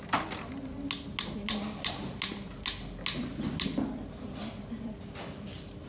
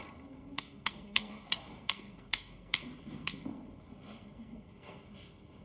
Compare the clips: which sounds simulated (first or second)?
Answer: second